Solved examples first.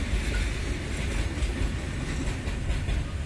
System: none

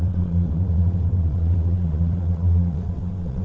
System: vocoder, WaveNeXt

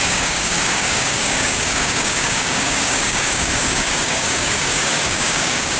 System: codec, DAC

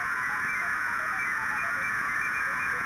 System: vocoder, Vocos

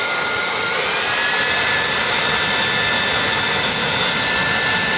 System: none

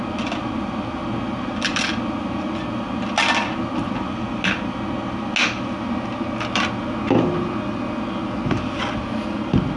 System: none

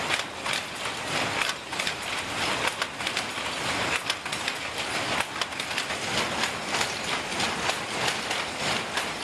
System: none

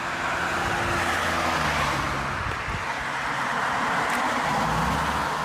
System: none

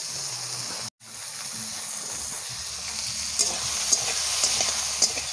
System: none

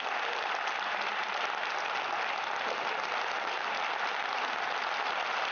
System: none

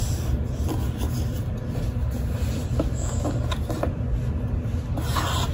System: none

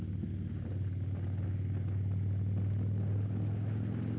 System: none